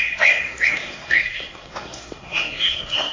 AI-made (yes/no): yes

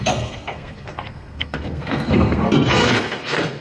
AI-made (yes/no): yes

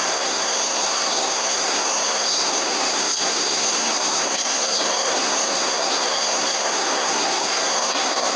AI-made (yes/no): yes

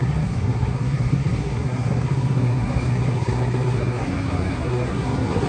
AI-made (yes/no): yes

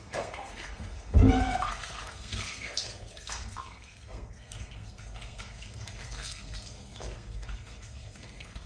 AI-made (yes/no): yes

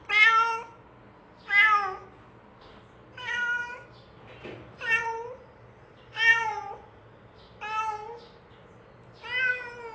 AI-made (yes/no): no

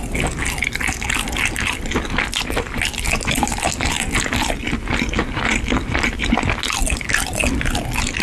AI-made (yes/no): no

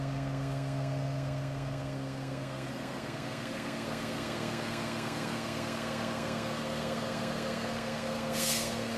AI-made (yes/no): yes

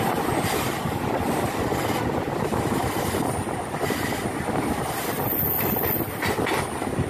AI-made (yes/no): no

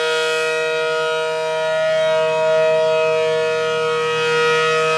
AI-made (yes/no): no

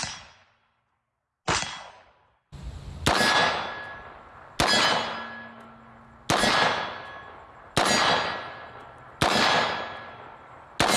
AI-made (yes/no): no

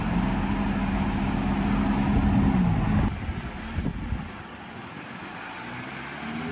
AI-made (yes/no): no